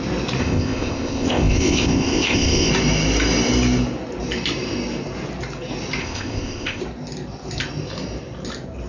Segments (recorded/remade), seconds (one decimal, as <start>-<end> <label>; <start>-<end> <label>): 0.0-0.4 recorded; 0.4-2.7 remade; 2.7-6.0 recorded; 6.0-6.8 remade; 6.8-8.9 recorded